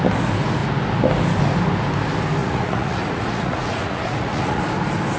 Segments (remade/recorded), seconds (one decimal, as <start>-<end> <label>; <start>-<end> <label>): 0.0-2.4 recorded; 2.4-4.6 remade; 4.6-5.2 recorded

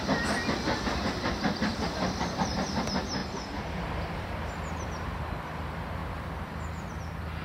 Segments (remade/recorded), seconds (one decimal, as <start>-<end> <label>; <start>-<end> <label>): 0.0-1.7 recorded; 1.7-2.7 remade; 2.7-3.2 recorded; 3.2-4.3 remade; 4.3-6.0 recorded; 6.0-6.9 remade; 6.9-7.4 recorded

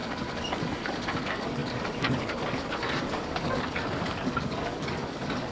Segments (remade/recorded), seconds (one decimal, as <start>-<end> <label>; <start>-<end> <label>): 0.0-5.5 remade

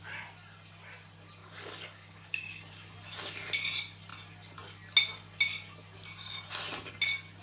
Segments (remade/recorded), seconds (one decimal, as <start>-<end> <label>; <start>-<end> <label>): 0.0-1.4 recorded; 1.4-2.6 remade; 2.6-7.4 recorded

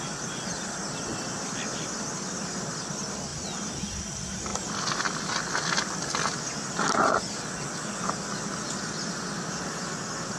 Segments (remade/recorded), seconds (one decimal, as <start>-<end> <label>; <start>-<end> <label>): 0.0-10.4 recorded

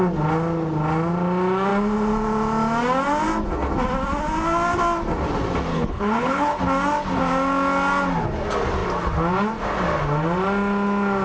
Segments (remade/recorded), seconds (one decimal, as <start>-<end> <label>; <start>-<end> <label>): 0.0-5.7 recorded; 5.7-6.6 remade; 6.6-11.2 recorded